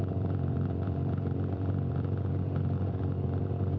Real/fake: fake